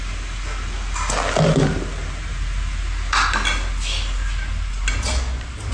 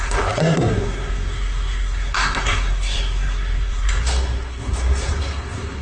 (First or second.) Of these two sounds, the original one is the first